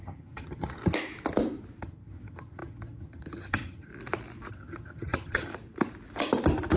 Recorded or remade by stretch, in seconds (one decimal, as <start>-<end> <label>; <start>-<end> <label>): 0.0-0.8 remade; 0.8-1.8 recorded; 1.8-3.9 remade; 3.9-4.5 recorded; 4.5-5.5 remade; 5.5-6.8 recorded